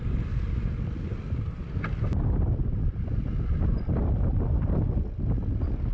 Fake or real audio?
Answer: real